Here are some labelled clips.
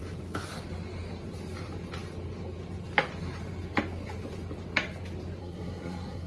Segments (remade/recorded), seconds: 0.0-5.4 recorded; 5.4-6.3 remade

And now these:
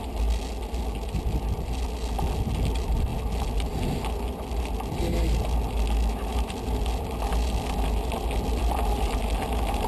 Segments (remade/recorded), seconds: 0.0-9.9 recorded

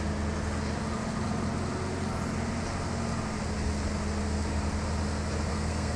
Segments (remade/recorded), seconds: 0.0-5.5 recorded; 5.5-6.0 remade